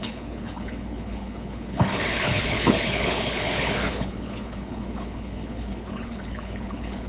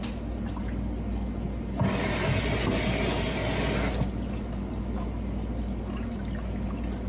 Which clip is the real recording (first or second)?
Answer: second